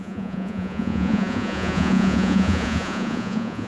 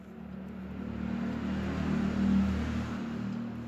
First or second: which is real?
second